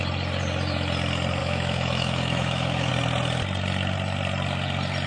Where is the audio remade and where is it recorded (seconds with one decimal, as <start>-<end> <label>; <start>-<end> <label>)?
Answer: 0.0-1.4 recorded; 1.4-2.9 remade; 2.9-5.1 recorded